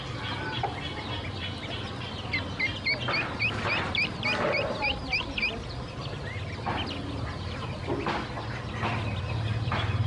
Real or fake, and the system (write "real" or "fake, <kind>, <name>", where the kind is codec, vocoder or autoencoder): real